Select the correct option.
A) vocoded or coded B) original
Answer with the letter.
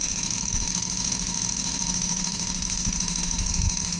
A